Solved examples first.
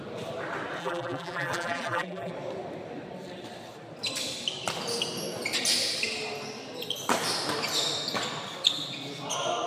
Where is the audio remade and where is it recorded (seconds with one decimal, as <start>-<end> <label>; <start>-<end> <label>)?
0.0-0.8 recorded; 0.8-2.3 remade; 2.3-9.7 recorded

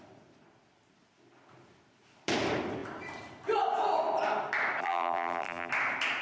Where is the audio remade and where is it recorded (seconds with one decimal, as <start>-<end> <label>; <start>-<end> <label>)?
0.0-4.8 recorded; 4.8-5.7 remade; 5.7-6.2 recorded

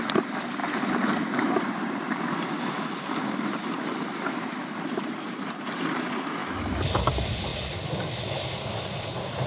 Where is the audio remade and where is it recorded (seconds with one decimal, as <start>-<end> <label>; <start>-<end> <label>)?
0.0-3.6 remade; 3.6-4.1 recorded; 4.1-6.4 remade; 6.4-7.1 recorded; 7.1-7.5 remade; 7.5-8.5 recorded; 8.5-9.5 remade

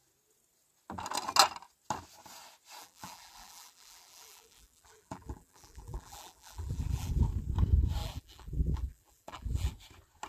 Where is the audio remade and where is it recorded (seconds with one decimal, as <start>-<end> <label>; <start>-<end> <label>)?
0.0-2.8 recorded; 2.8-7.2 remade; 7.2-8.0 recorded; 8.0-9.7 remade; 9.7-10.3 recorded